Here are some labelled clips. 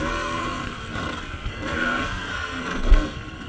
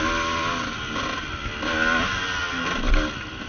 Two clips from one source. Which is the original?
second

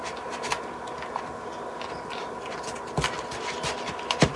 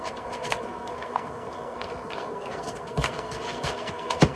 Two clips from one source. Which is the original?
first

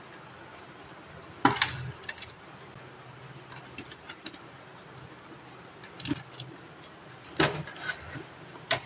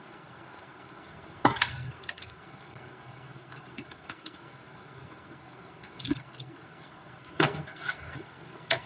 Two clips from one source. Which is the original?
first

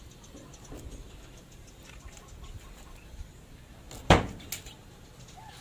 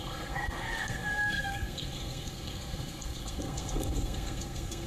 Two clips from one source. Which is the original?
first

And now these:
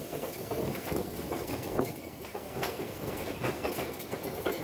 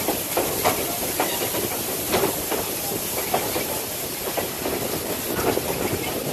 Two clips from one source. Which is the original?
second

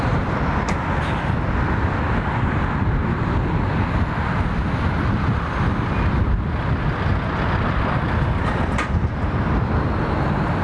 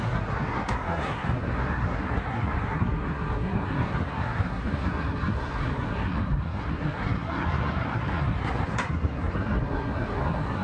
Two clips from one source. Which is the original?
first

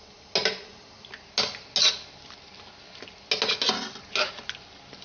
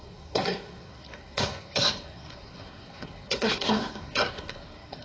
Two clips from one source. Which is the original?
first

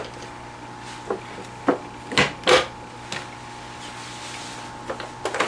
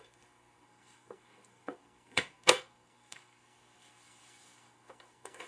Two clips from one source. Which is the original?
first